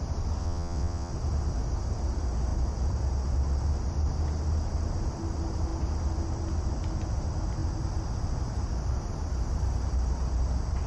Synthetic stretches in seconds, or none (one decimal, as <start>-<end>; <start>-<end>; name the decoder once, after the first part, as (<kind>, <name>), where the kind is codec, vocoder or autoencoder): 0.4-1.1 (vocoder, WaveNeXt)